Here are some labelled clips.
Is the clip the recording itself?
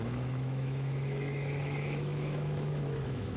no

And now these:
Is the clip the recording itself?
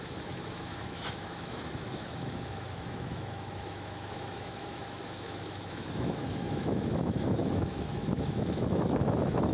no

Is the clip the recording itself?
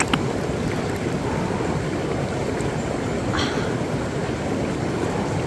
yes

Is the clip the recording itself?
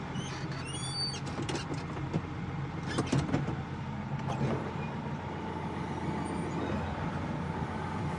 yes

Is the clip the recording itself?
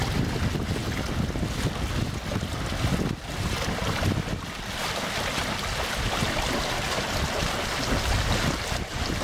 yes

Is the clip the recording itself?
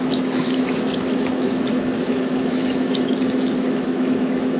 no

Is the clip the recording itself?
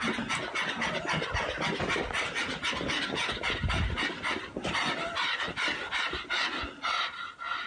yes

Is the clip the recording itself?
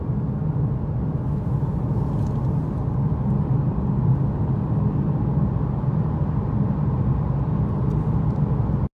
yes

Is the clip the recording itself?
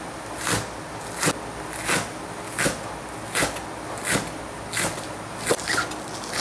yes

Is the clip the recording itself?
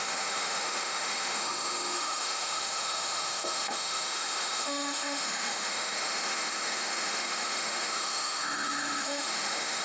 no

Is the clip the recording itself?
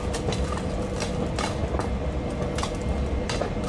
yes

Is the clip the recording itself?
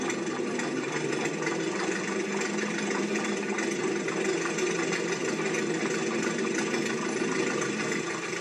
yes